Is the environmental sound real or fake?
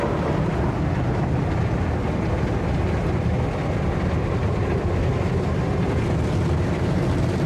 real